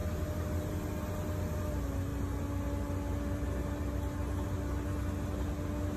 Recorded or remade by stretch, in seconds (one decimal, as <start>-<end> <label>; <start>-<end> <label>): 0.0-6.0 recorded